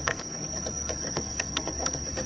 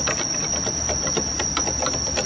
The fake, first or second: first